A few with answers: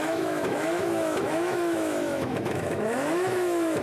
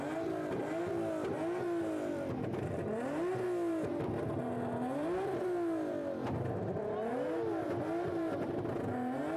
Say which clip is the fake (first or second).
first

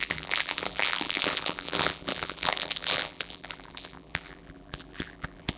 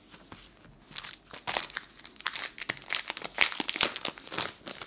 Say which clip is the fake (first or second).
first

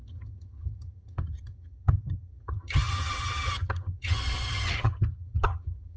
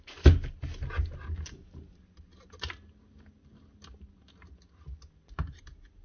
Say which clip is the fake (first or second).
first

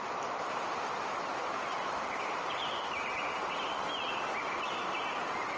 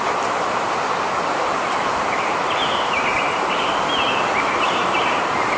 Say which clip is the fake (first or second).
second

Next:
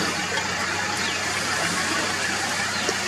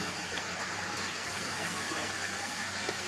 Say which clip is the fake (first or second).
second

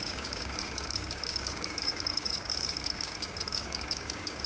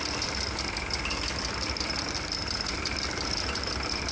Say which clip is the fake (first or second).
first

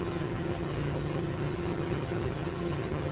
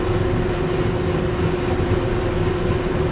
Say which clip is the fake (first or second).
first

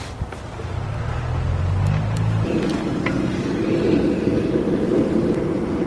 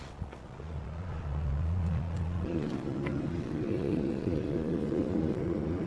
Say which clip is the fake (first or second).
second